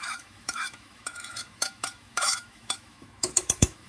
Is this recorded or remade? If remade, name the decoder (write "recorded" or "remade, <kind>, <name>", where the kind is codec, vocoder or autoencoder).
remade, autoencoder, DAC-VAE